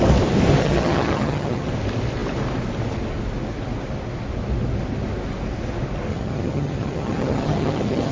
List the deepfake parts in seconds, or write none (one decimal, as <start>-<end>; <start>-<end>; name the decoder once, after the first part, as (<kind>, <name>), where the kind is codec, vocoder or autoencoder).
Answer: 0.6-1.7 (vocoder, HiFi-GAN); 6.1-8.1